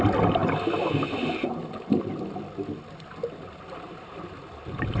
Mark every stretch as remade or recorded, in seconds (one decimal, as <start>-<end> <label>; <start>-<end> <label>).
0.0-5.0 recorded